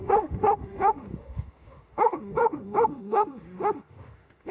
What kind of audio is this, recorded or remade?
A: remade